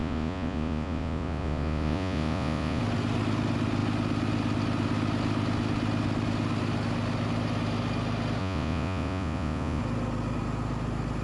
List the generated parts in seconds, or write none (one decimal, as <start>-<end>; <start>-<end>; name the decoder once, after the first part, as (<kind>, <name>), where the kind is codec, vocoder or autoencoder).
0.0-2.8 (vocoder, Vocos); 8.4-9.8